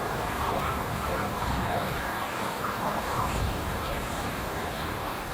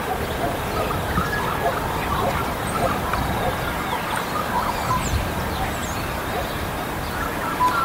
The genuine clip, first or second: second